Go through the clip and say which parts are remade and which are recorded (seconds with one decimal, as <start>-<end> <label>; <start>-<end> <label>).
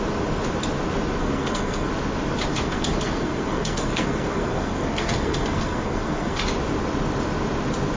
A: 0.0-1.2 recorded; 1.2-1.9 remade; 1.9-2.5 recorded; 2.5-6.4 remade; 6.4-8.0 recorded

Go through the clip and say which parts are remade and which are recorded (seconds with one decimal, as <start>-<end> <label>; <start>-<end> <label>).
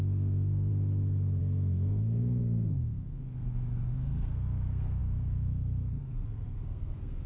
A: 0.0-0.7 remade; 0.7-1.4 recorded; 1.4-7.3 remade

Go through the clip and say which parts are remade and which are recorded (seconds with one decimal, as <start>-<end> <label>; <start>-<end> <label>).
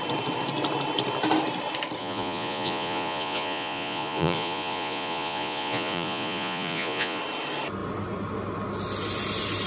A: 0.0-2.0 recorded; 2.0-7.2 remade; 7.2-9.7 recorded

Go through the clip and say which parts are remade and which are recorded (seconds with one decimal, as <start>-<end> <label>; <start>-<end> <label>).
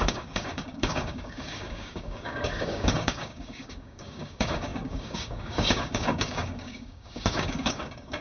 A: 0.0-8.2 remade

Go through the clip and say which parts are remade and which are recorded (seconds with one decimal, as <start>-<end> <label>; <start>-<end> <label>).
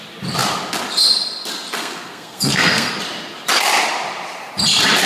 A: 0.0-1.8 recorded; 1.8-2.9 remade; 2.9-5.1 recorded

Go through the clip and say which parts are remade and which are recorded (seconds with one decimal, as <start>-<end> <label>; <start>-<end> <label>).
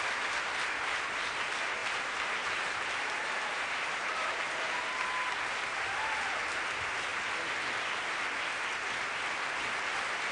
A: 0.0-1.8 recorded; 1.8-4.4 remade; 4.4-10.3 recorded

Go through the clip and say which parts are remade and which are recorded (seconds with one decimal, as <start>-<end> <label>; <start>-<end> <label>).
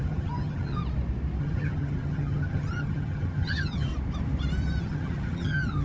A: 0.0-0.8 remade; 0.8-1.4 recorded; 1.4-3.9 remade; 3.9-4.8 recorded; 4.8-5.8 remade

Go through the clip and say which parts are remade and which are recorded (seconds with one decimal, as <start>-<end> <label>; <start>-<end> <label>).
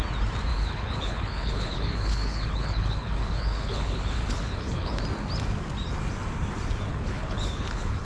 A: 0.0-0.5 recorded; 0.5-5.0 remade; 5.0-6.9 recorded; 6.9-8.0 remade